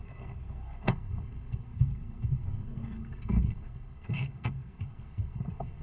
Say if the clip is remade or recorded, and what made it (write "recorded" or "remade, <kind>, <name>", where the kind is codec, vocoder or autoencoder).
remade, codec, SNAC